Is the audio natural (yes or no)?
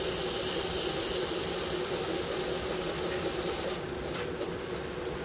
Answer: yes